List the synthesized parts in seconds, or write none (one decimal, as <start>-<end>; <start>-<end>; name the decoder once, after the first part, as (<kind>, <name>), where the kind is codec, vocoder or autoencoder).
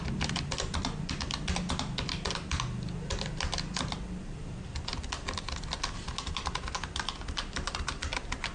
none